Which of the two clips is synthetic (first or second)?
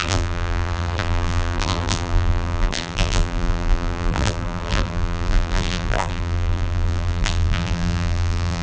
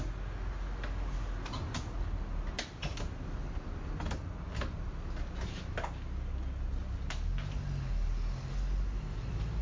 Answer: first